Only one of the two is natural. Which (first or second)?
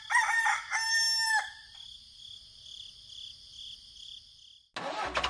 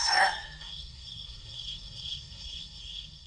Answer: first